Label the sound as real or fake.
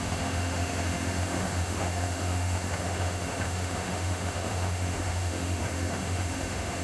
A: fake